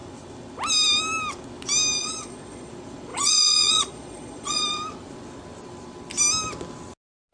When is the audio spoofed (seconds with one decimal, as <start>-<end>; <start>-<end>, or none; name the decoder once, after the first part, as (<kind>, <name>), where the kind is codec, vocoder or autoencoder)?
2.0-2.7 (vocoder, Vocos); 3.1-4.6